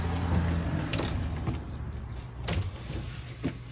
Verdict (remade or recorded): recorded